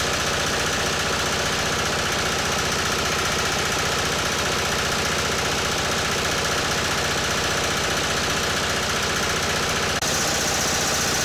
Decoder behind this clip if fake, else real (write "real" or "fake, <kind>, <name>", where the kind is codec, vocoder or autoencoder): real